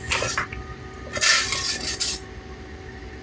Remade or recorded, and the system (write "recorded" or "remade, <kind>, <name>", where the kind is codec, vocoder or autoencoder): recorded